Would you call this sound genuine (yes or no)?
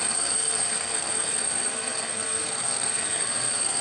no